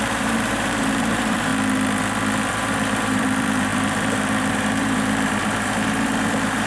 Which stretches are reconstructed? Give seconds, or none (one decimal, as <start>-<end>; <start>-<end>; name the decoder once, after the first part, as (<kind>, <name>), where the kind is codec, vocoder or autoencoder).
0.0-1.5 (vocoder, BigVGAN v2); 2.5-6.7